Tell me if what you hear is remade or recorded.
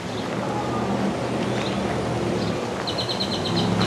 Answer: recorded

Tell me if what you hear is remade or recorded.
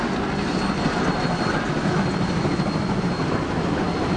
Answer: recorded